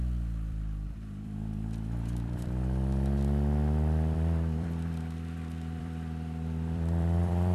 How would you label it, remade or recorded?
remade